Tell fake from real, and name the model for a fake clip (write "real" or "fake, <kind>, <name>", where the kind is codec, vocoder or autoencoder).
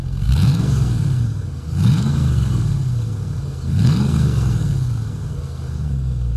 fake, codec, SNAC